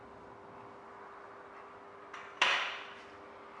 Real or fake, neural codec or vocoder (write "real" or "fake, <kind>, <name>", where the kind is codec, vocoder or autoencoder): real